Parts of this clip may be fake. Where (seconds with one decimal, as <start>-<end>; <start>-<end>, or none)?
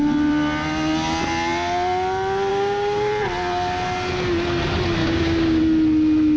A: 2.5-3.1; 5.0-5.6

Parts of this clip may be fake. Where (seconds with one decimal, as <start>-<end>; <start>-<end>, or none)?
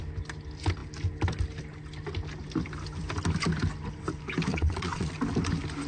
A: 4.5-5.1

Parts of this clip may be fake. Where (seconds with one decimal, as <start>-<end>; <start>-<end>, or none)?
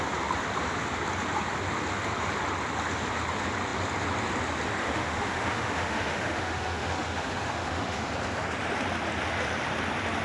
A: 4.8-8.1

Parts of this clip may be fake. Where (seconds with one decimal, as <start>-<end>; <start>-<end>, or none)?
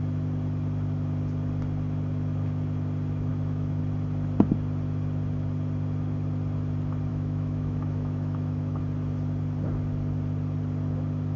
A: 3.3-3.8; 7.1-8.8